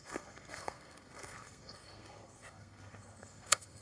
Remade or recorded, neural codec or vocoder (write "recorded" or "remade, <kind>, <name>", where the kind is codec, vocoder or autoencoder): remade, codec, SNAC